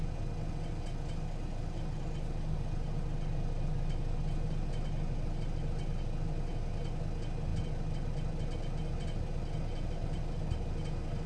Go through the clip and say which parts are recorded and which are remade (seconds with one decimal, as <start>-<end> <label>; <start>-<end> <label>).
0.0-11.3 recorded